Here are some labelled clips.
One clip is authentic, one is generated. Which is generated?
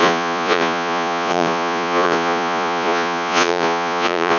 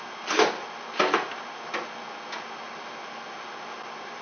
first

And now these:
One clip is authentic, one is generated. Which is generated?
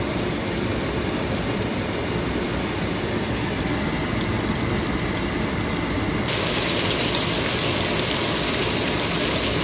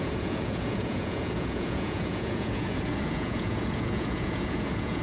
second